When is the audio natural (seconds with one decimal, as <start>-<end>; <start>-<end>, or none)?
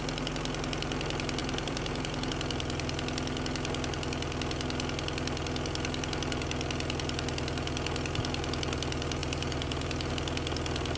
0.0-1.4; 2.3-9.2; 10.1-11.0